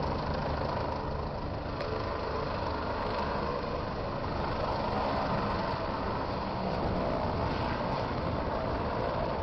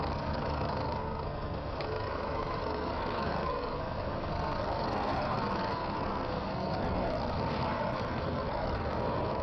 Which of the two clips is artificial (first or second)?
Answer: second